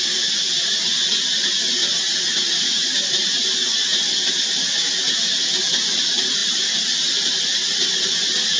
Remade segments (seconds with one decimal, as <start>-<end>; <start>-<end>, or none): none